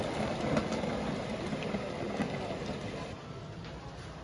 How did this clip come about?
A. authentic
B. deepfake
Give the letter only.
A